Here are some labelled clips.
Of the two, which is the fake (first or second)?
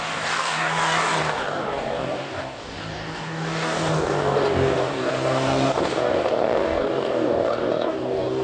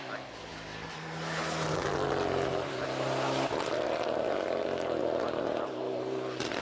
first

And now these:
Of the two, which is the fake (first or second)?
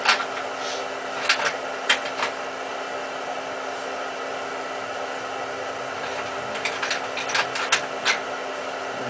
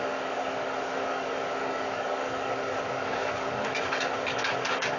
second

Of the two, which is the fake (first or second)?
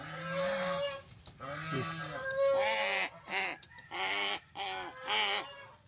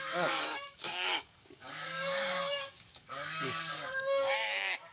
second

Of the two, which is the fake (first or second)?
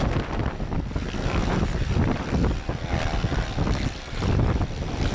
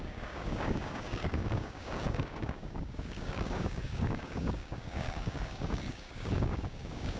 second